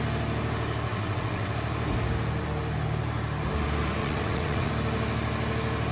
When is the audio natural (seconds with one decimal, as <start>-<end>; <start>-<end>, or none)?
0.0-0.9; 1.5-4.0; 4.7-5.9